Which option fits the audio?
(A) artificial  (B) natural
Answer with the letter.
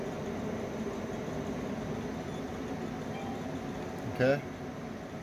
B